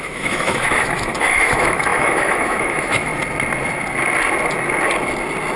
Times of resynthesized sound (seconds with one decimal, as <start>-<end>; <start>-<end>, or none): 0.0-3.1